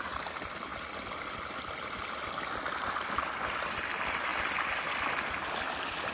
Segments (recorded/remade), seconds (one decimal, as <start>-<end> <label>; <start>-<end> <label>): 0.0-6.1 recorded